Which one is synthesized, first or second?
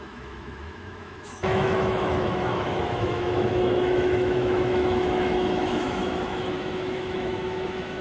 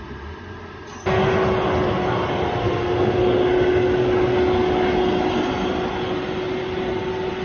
first